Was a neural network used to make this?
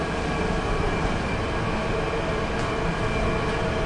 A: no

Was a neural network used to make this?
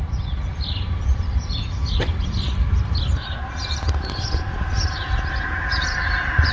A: no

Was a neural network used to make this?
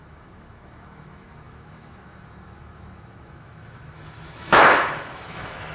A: yes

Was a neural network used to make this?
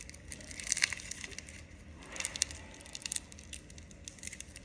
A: no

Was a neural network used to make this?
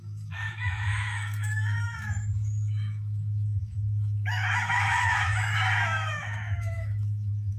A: yes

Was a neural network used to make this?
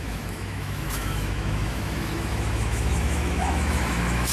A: yes